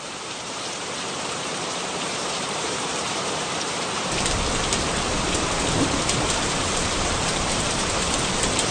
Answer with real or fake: fake